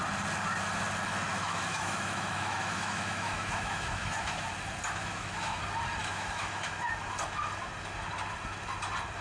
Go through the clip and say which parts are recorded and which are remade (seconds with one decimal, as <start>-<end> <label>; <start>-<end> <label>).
0.0-1.3 recorded; 1.3-4.5 remade; 4.5-5.0 recorded; 5.0-5.6 remade; 5.6-6.0 recorded; 6.0-6.7 remade; 6.7-9.2 recorded